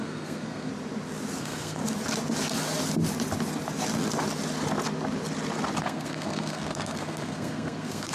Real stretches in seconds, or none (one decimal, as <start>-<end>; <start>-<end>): 0.7-1.4; 1.8-5.8